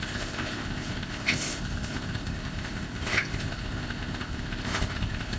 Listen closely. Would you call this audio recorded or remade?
remade